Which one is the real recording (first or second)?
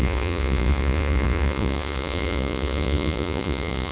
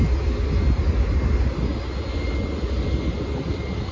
second